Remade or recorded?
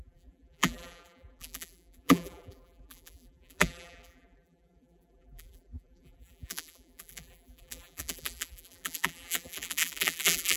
remade